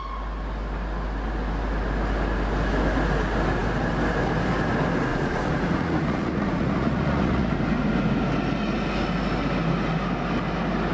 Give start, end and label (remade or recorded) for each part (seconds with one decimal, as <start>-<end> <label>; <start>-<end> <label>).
0.0-5.1 recorded; 5.1-7.5 remade; 7.5-10.9 recorded

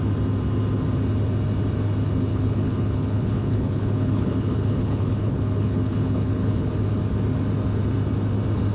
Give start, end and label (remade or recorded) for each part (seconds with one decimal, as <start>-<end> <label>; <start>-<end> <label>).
0.0-2.3 recorded; 2.3-6.7 remade; 6.7-8.7 recorded